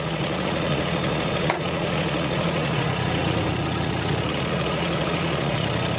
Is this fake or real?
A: fake